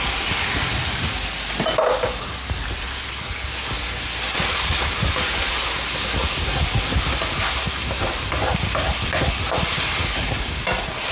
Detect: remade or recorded recorded